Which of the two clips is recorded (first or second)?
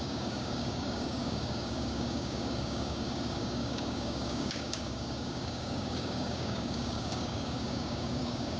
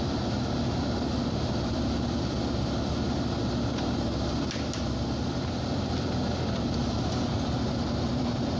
second